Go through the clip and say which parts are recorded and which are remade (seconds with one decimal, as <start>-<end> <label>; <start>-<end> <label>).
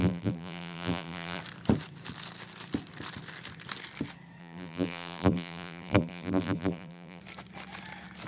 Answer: 0.0-1.4 remade; 1.4-4.4 recorded; 4.4-7.2 remade; 7.2-8.3 recorded